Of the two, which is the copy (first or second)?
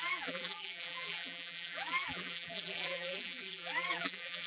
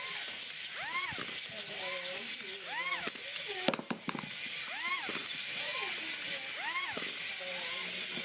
first